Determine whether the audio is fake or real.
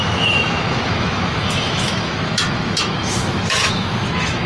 fake